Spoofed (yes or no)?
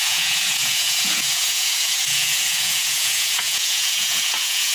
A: yes